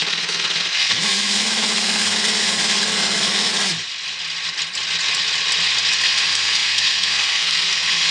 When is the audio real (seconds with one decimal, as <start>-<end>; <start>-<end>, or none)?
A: 3.5-6.0